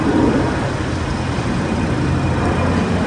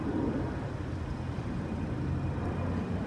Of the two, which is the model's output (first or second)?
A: second